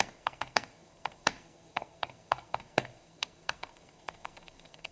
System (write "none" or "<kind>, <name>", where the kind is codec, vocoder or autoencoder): codec, SNAC